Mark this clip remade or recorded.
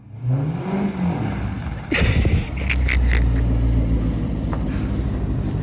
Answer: recorded